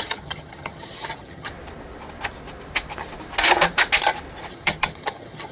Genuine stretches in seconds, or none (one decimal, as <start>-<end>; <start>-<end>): 1.5-4.5